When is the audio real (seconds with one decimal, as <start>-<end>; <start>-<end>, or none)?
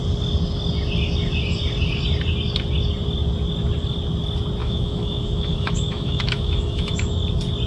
0.0-4.6; 7.2-7.7